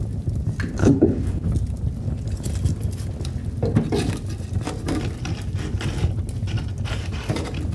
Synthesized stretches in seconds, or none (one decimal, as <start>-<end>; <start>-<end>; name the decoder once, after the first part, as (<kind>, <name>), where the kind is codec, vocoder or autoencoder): 0.8-1.5 (codec, HILCodec)